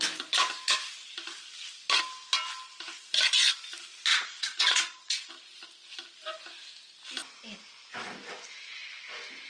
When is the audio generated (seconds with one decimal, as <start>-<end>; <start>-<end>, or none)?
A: 4.1-5.3